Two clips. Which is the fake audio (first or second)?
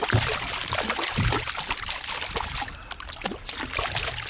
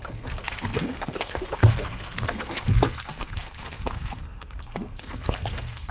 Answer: second